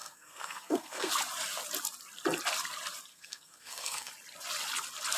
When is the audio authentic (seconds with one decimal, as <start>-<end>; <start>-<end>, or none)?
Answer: 1.1-3.1; 4.1-5.2